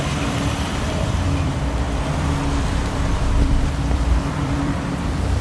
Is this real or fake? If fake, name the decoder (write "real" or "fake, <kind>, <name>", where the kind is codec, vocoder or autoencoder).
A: fake, vocoder, BigVGAN v2